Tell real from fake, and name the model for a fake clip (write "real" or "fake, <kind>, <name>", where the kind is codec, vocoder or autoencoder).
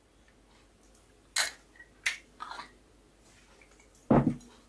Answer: real